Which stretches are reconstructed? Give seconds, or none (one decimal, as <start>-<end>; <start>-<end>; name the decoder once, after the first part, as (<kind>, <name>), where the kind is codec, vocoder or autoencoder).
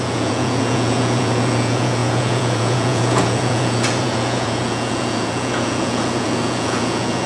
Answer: 0.0-7.3 (vocoder, Vocos)